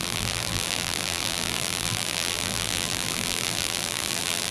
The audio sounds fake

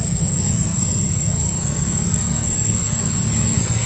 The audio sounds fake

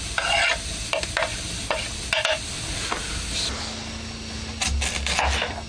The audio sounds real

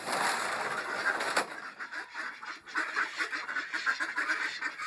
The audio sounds real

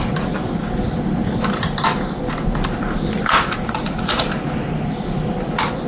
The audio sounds real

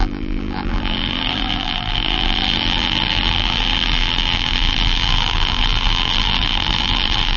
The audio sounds fake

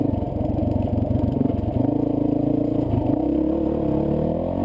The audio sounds real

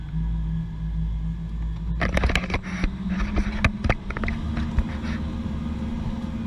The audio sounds real